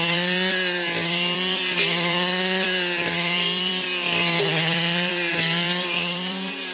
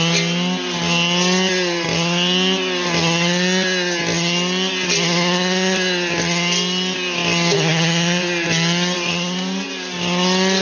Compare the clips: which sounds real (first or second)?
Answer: second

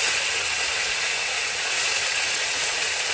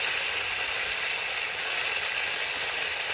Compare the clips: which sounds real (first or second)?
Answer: second